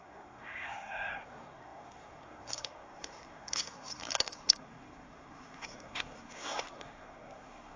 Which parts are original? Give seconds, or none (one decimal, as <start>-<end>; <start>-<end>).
none